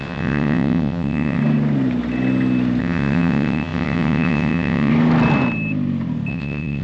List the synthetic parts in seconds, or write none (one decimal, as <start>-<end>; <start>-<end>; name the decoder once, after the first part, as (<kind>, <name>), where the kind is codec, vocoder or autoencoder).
0.0-1.4 (vocoder, WaveNeXt); 2.8-4.9; 6.3-6.8